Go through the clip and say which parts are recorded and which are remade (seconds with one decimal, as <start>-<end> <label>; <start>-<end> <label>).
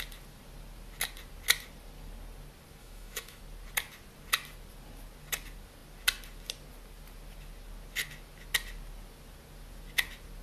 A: 0.0-2.8 recorded; 2.8-3.4 remade; 3.4-10.4 recorded